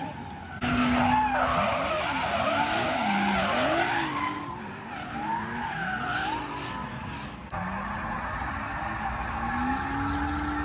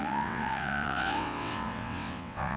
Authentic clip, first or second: first